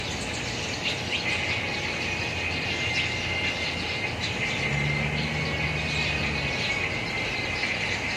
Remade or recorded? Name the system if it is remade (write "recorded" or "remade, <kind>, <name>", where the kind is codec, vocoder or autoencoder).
recorded